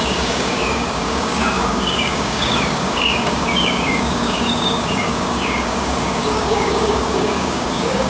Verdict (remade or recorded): remade